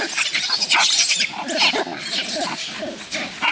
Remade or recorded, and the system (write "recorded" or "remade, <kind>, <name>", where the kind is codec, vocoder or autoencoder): recorded